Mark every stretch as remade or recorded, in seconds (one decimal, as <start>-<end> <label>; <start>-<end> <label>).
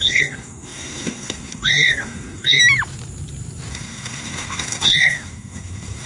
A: 0.0-2.6 remade; 2.6-3.7 recorded; 3.7-6.1 remade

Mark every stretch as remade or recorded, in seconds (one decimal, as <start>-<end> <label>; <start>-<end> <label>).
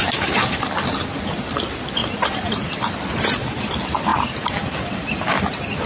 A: 0.0-4.1 remade; 4.1-4.8 recorded; 4.8-5.9 remade